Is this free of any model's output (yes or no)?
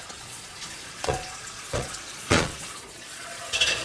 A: no